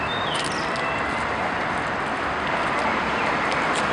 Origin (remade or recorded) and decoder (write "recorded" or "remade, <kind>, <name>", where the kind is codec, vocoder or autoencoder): recorded